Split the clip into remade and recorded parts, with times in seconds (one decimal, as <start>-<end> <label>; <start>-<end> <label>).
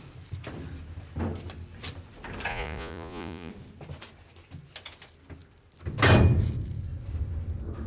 0.0-2.5 recorded; 2.5-3.5 remade; 3.5-7.9 recorded